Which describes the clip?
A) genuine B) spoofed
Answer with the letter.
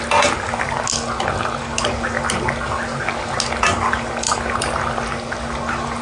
A